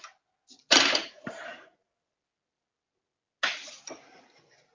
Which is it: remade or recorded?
recorded